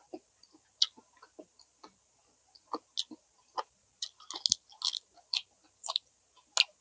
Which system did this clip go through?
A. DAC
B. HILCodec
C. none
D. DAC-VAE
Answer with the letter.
C